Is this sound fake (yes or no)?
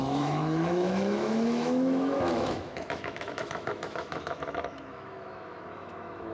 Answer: yes